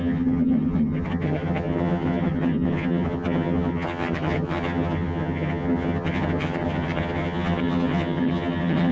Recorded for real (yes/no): no